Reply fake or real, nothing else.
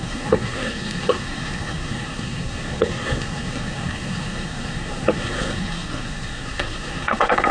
fake